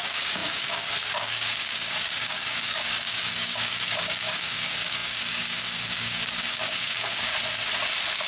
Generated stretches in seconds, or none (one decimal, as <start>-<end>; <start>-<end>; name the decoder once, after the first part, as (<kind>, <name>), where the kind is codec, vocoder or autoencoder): 0.0-7.3 (codec, DAC)